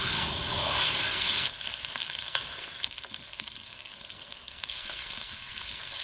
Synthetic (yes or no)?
yes